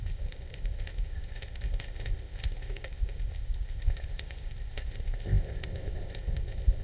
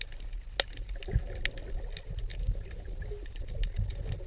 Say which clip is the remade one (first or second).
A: first